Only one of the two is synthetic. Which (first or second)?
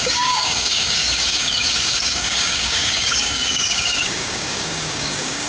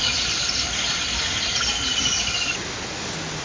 first